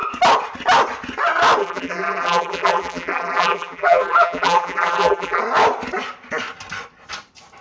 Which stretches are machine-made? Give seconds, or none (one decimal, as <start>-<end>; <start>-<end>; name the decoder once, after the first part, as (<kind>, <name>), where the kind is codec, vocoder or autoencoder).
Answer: 1.6-5.4 (vocoder, BigVGAN v2)

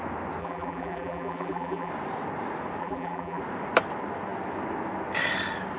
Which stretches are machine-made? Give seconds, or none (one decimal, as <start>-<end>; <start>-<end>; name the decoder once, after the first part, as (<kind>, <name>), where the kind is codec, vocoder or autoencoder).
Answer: 0.4-1.9 (vocoder, BigVGAN v2); 2.8-3.4

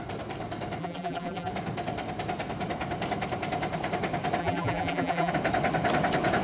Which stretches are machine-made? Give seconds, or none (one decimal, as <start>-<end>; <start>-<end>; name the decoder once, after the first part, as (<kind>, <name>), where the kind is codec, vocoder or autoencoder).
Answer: 0.8-1.5 (vocoder, BigVGAN v2); 4.4-5.3

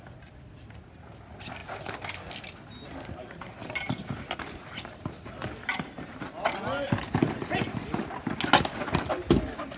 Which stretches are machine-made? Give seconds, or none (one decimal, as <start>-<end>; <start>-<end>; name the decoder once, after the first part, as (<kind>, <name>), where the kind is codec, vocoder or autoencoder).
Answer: none

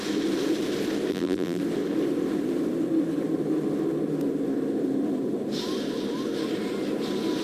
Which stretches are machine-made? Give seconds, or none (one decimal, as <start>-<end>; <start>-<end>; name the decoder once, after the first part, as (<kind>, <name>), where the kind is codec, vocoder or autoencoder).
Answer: 1.1-1.6 (vocoder, BigVGAN v2)

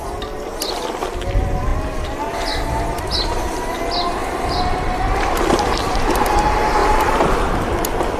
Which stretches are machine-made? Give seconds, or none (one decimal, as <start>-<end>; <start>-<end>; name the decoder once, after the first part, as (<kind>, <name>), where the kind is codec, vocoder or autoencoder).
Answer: 4.2-5.0 (vocoder, BigVGAN v2); 6.8-8.2